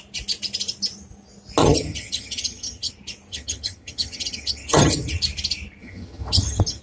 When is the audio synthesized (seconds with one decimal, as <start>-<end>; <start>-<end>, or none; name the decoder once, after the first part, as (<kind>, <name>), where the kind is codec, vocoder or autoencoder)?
1.6-2.9 (vocoder, HiFi-GAN); 3.3-5.2; 5.8-6.8